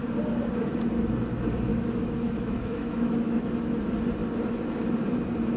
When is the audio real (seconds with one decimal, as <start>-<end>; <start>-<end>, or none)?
0.0-1.7; 3.8-5.6